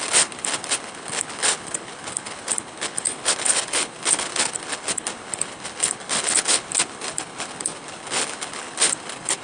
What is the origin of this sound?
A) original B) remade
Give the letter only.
B